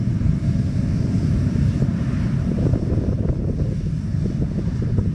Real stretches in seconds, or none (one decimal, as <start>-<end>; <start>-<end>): 2.7-4.6